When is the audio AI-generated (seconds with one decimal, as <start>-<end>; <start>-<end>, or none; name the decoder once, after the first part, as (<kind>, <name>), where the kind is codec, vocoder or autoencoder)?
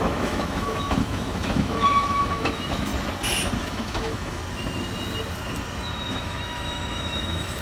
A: 0.0-2.9 (autoencoder, DAC-VAE); 3.6-4.4; 6.1-7.6